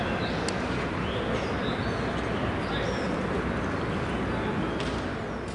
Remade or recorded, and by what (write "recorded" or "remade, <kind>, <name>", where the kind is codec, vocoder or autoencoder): recorded